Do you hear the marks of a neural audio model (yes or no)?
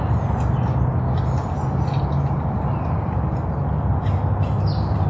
no